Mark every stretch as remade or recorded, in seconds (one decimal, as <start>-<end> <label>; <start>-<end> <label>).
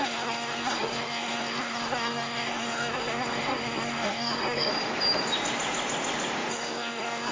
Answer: 0.0-4.7 remade; 4.7-6.5 recorded; 6.5-7.3 remade